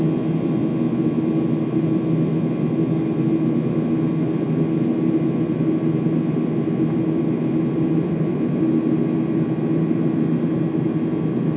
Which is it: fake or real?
real